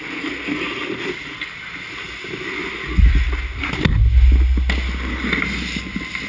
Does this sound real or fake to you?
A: real